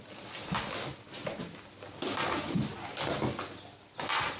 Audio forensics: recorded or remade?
recorded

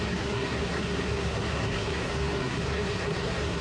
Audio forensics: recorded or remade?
remade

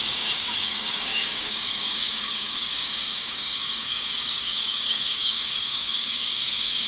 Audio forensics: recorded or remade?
remade